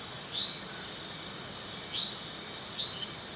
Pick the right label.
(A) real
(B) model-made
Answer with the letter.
A